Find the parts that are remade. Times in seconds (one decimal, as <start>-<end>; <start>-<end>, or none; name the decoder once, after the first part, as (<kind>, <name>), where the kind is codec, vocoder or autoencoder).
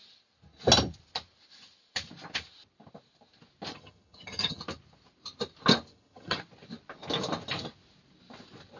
3.7-4.6 (vocoder, HiFi-GAN); 5.9-6.4